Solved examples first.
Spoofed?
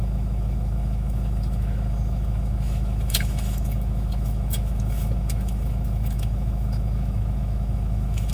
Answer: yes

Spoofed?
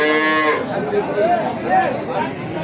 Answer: no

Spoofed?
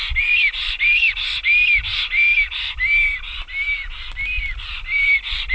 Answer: no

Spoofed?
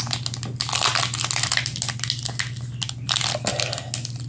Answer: no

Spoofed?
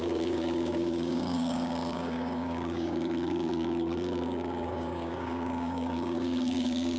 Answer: yes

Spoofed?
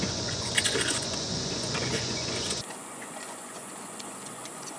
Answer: yes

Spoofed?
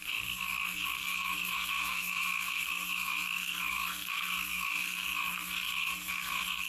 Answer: yes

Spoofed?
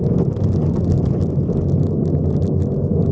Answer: no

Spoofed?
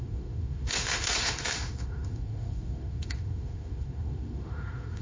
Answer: yes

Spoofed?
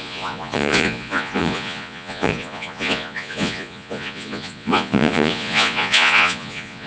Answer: yes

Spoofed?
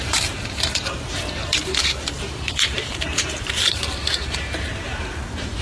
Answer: yes